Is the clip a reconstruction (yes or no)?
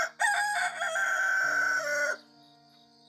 no